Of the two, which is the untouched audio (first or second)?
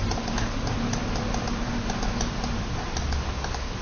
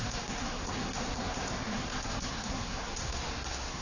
first